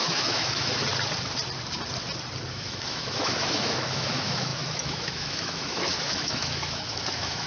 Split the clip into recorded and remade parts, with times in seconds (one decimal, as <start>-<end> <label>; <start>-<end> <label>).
0.0-0.8 remade; 0.8-2.5 recorded; 2.5-7.5 remade